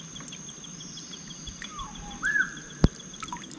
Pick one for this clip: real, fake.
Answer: fake